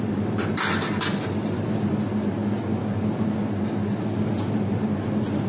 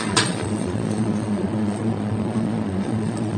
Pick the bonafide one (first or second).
first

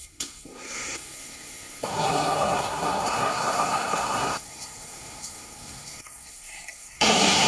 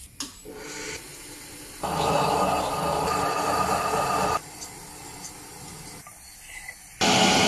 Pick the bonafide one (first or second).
second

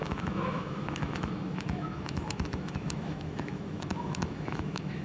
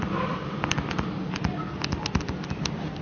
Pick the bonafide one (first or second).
second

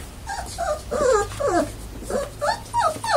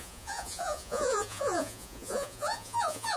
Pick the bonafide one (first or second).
first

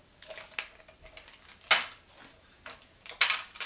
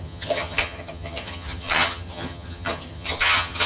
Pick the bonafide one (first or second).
first